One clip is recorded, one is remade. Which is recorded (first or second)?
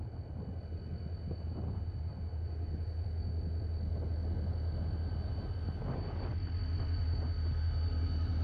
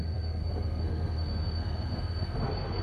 first